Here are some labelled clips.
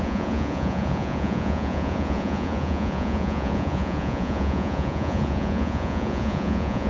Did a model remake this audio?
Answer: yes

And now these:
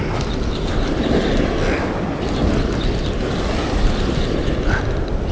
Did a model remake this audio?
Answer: no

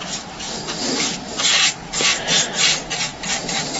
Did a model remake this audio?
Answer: no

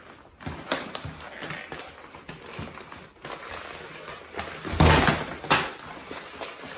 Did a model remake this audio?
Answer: no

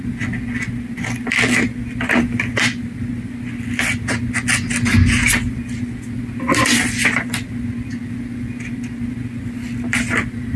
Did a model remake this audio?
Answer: no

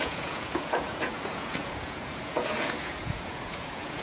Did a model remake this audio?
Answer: yes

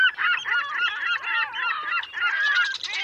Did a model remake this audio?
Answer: no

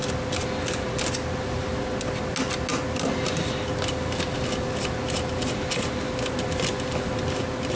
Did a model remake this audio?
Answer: no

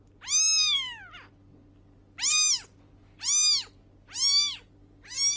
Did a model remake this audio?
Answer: no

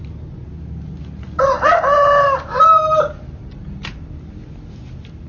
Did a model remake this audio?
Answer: no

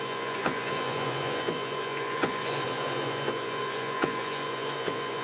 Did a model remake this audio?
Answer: yes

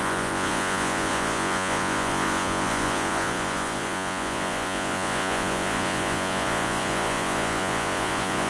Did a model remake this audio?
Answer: yes